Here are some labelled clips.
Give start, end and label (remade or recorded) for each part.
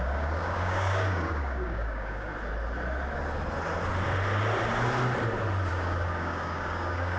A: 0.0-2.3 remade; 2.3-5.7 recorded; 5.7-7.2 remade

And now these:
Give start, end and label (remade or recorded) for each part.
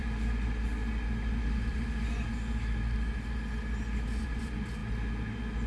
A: 0.0-0.8 remade; 0.8-4.2 recorded; 4.2-4.8 remade; 4.8-5.7 recorded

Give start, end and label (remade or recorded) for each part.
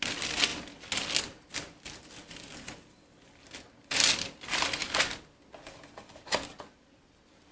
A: 0.0-7.5 recorded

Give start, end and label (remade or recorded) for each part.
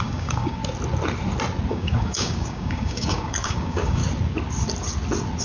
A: 0.0-0.6 remade; 0.6-1.7 recorded; 1.7-4.0 remade; 4.0-5.4 recorded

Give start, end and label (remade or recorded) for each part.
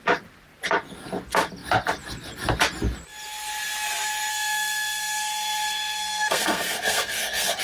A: 0.0-4.3 recorded; 4.3-7.6 remade